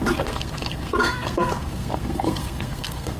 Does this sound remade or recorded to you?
remade